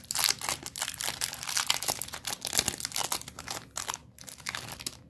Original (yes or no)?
yes